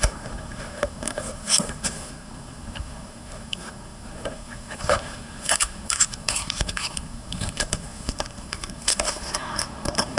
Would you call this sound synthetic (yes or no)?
yes